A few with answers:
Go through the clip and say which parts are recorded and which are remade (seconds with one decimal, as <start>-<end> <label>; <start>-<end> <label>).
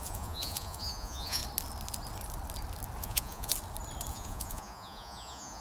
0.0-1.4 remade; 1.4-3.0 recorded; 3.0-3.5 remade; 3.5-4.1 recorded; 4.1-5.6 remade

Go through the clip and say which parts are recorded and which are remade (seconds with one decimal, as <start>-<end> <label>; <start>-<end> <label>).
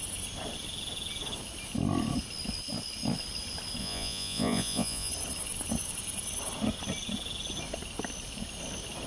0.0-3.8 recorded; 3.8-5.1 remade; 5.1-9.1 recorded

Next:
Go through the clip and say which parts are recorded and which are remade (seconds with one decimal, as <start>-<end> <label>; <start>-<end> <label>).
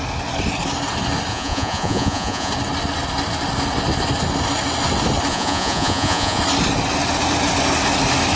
0.0-1.3 recorded; 1.3-2.5 remade; 2.5-5.3 recorded; 5.3-6.4 remade; 6.4-8.4 recorded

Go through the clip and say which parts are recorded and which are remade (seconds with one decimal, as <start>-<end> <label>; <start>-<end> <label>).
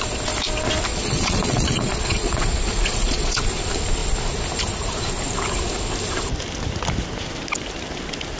0.0-0.9 recorded; 0.9-3.4 remade; 3.4-8.4 recorded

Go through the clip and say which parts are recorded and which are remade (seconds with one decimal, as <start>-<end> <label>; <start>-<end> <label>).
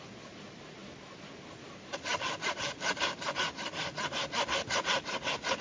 0.0-5.6 recorded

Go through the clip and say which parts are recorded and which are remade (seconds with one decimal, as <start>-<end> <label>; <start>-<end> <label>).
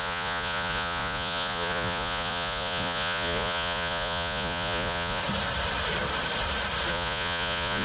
0.0-5.2 remade; 5.2-6.9 recorded; 6.9-7.8 remade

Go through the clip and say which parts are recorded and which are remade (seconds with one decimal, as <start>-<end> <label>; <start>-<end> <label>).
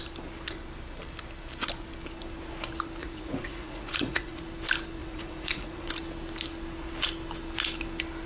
0.0-3.0 recorded; 3.0-4.4 remade; 4.4-5.0 recorded; 5.0-5.9 remade; 5.9-8.3 recorded